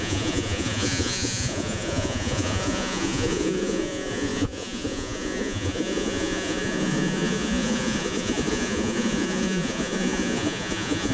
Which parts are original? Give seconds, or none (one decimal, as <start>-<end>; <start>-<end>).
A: none